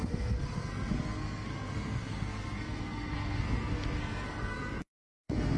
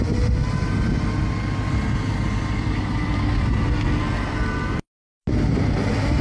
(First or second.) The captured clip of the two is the second